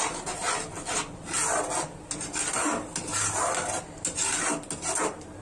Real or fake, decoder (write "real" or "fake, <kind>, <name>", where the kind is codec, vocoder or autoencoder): real